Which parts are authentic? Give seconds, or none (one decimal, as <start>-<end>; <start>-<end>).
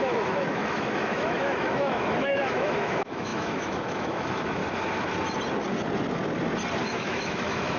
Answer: 4.6-6.8